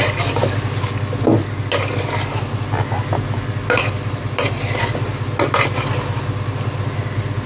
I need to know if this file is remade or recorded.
recorded